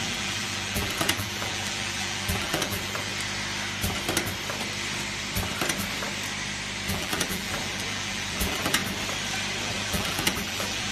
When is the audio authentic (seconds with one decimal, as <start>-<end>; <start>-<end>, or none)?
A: 3.1-6.9; 8.8-9.6